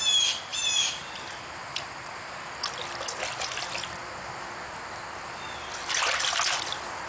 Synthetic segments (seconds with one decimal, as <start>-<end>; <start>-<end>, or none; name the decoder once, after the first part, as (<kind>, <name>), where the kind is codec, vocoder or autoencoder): none

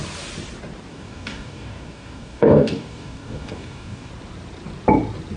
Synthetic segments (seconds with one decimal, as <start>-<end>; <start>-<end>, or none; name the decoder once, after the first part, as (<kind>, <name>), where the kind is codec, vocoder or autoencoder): 0.9-4.1 (codec, DAC)

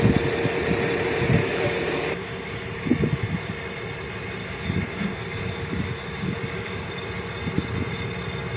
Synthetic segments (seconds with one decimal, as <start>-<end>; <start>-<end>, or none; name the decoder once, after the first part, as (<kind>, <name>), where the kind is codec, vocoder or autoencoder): 1.4-3.5 (codec, DAC); 4.4-6.9

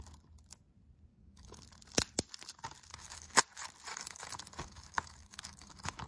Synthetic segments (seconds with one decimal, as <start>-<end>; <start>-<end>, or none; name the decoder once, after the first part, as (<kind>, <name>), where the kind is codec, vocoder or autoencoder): 1.1-1.6 (codec, DAC); 2.9-3.4; 3.9-6.1

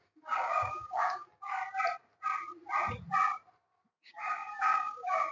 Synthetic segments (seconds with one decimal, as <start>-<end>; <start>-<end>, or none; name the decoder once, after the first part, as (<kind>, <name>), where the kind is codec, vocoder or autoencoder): 0.0-1.6 (codec, DAC); 3.9-5.3

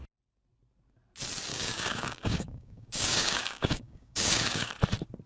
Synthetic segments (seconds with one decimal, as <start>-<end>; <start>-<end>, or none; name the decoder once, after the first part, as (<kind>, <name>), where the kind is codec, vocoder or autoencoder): 1.5-4.7 (codec, DAC)

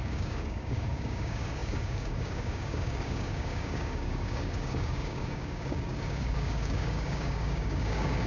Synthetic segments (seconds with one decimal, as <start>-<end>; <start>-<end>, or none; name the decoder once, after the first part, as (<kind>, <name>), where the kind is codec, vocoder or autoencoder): 0.0-8.3 (codec, DAC)

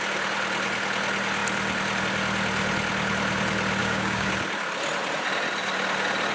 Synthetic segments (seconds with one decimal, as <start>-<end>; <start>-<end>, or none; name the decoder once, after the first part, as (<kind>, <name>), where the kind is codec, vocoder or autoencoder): 3.8-4.3 (codec, DAC)